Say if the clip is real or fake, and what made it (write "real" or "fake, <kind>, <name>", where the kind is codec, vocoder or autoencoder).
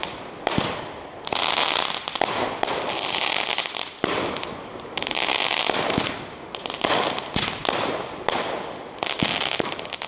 real